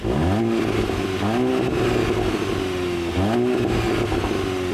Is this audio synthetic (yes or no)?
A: no